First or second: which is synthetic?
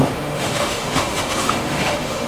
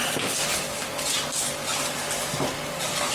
first